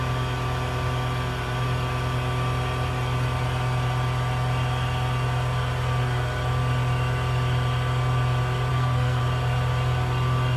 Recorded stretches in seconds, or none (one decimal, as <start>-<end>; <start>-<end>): 0.0-8.7; 9.2-10.6